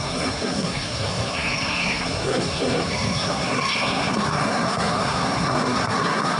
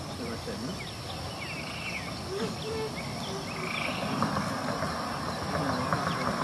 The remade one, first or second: first